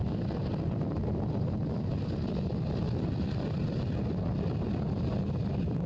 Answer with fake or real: real